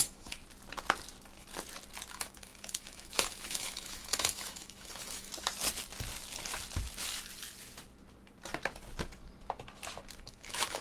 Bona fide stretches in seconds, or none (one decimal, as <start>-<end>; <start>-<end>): 0.4-2.1; 5.3-10.2